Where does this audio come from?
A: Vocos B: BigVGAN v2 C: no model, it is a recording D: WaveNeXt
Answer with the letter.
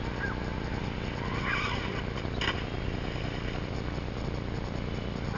C